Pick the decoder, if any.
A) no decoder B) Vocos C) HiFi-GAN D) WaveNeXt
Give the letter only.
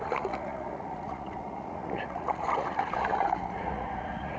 B